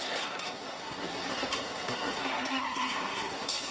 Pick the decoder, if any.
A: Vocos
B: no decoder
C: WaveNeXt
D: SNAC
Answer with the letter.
D